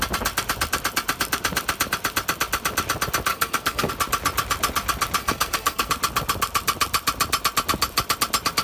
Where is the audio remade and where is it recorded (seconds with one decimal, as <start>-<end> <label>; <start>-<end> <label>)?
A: 0.0-3.3 recorded; 3.3-3.9 remade; 3.9-5.2 recorded; 5.2-5.9 remade; 5.9-8.6 recorded

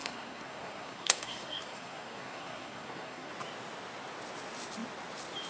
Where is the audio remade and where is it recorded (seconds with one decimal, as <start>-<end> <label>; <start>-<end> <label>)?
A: 0.0-3.3 remade; 3.3-5.5 recorded

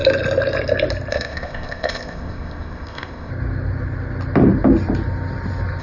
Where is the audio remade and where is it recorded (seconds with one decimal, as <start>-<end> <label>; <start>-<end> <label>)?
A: 0.0-1.1 recorded; 1.1-3.3 remade; 3.3-5.8 recorded

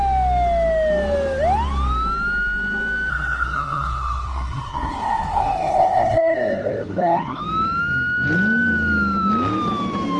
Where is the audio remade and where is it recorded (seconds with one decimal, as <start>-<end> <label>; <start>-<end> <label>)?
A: 0.0-3.1 recorded; 3.1-7.4 remade; 7.4-10.2 recorded

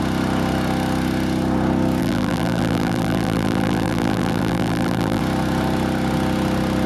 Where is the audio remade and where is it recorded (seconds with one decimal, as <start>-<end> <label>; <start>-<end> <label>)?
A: 0.0-2.0 recorded; 2.0-5.2 remade; 5.2-6.9 recorded

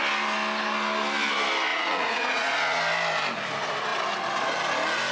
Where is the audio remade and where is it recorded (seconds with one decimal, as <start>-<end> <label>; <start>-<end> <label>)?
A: 0.0-1.7 recorded; 1.7-2.8 remade; 2.8-5.1 recorded

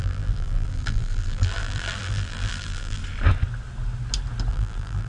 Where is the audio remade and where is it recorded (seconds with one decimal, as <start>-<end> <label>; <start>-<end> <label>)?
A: 0.0-3.0 remade; 3.0-4.5 recorded; 4.5-5.1 remade

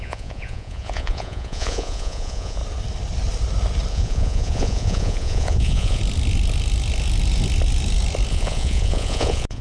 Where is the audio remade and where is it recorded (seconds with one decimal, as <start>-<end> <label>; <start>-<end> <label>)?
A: 0.0-2.6 remade; 2.6-3.9 recorded; 3.9-6.0 remade; 6.0-8.3 recorded; 8.3-9.6 remade